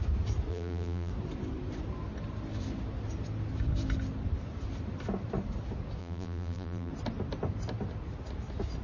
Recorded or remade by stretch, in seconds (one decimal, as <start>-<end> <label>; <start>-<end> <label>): 0.0-0.5 recorded; 0.5-1.1 remade; 1.1-6.0 recorded; 6.0-6.9 remade; 6.9-8.8 recorded

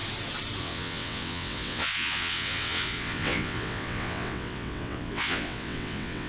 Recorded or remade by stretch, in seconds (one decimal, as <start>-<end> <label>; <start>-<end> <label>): 0.0-0.6 recorded; 0.6-6.3 remade

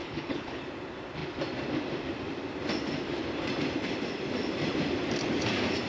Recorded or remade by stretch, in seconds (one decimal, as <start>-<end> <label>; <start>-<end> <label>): 0.0-0.6 remade; 0.6-5.9 recorded

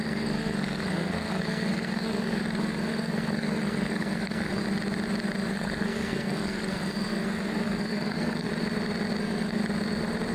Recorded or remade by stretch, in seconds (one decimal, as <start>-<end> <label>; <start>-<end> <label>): 0.0-4.6 remade; 4.6-5.5 recorded; 5.5-8.5 remade; 8.5-9.2 recorded; 9.2-9.6 remade; 9.6-10.3 recorded

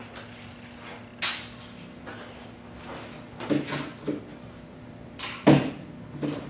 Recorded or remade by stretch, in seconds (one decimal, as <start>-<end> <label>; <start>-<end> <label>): 0.0-4.3 recorded; 4.3-5.7 remade; 5.7-6.5 recorded